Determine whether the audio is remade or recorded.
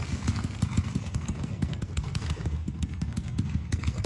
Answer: remade